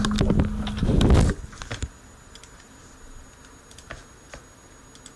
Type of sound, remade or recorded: recorded